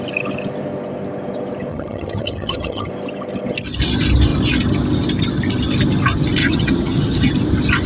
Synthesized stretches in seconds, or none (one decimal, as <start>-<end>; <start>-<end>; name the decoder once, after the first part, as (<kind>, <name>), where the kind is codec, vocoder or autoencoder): 1.7-2.9 (vocoder, HiFi-GAN); 6.4-7.3